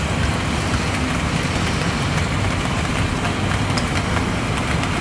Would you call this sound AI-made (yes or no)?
no